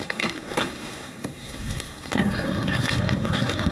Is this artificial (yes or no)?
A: yes